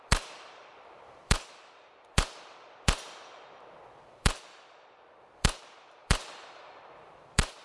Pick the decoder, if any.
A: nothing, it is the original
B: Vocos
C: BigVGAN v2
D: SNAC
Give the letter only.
C